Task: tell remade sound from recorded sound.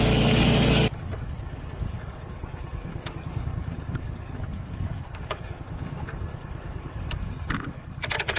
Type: remade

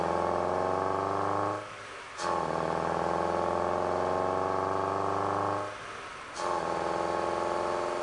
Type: recorded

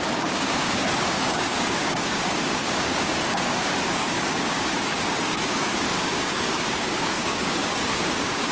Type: remade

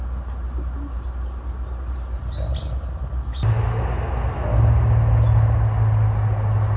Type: recorded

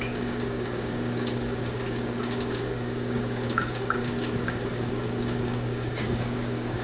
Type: remade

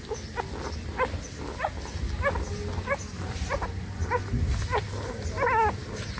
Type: recorded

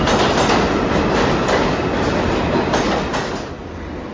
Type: recorded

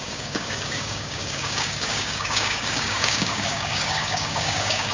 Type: remade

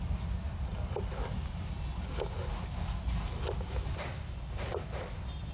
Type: recorded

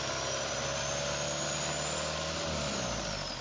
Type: recorded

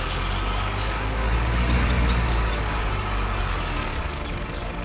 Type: remade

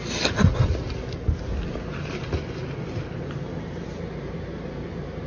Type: recorded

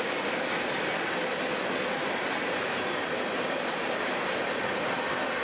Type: recorded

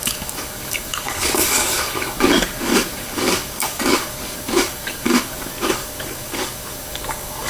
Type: remade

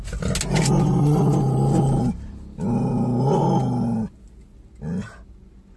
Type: recorded